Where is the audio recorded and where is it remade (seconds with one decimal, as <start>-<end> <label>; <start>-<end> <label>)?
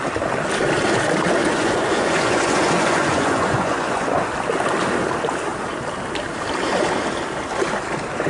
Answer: 0.0-1.4 recorded; 1.4-4.3 remade; 4.3-8.3 recorded